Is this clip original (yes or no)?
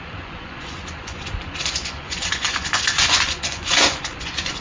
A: no